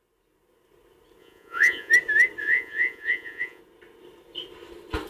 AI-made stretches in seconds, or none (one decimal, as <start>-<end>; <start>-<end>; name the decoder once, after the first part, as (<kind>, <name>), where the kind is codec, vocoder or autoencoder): 1.2-1.9 (vocoder, Vocos); 2.4-3.6